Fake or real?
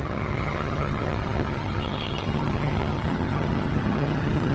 fake